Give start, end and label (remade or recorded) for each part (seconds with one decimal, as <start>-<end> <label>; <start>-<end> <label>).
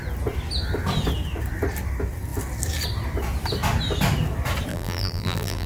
0.0-4.7 recorded; 4.7-5.7 remade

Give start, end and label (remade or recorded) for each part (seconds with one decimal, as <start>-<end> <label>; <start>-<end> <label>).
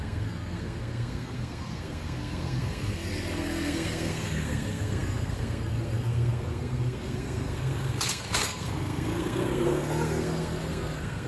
0.0-11.3 remade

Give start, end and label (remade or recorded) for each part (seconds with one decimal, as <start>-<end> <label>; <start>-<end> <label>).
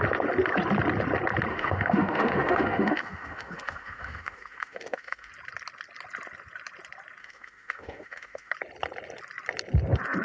0.0-1.5 recorded; 1.5-5.3 remade; 5.3-7.2 recorded; 7.2-8.5 remade; 8.5-10.2 recorded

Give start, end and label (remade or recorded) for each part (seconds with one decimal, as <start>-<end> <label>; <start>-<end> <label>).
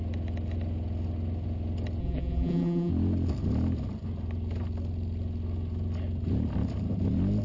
0.0-2.0 recorded; 2.0-2.9 remade; 2.9-7.4 recorded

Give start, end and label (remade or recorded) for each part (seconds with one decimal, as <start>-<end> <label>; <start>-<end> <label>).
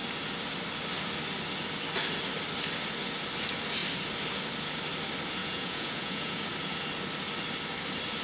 0.0-5.4 recorded; 5.4-6.4 remade; 6.4-8.2 recorded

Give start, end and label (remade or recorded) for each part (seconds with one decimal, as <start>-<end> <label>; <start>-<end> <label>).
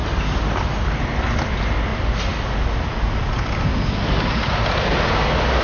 0.0-5.6 recorded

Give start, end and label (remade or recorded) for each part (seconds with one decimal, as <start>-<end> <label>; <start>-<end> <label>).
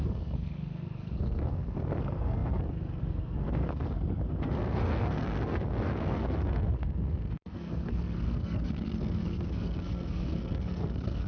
0.0-11.3 remade